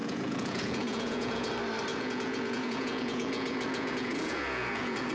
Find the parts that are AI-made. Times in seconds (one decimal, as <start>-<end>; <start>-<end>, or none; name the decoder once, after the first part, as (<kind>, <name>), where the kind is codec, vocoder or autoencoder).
0.0-1.5 (vocoder, Vocos); 1.9-5.1